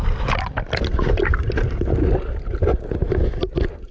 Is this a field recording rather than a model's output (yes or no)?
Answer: yes